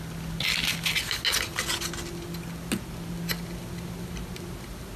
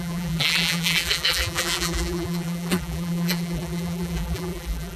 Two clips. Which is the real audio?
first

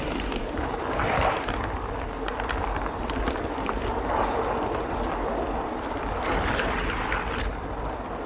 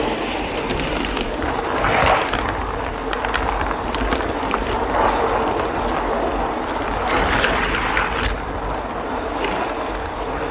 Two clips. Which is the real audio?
second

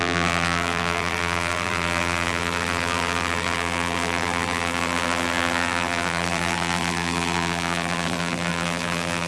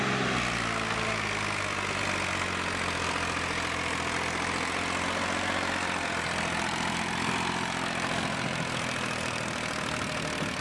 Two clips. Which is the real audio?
second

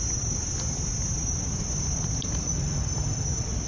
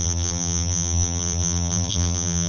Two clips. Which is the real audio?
first